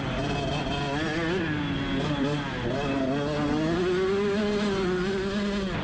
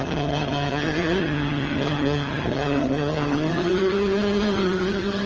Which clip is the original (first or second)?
first